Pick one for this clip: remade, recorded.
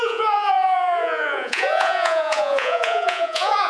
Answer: remade